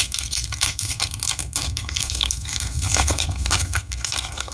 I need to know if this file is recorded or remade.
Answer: remade